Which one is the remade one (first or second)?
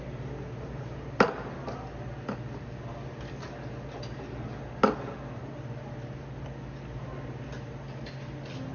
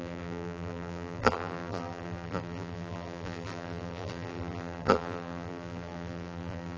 second